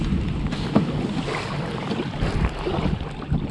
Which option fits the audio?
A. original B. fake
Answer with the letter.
A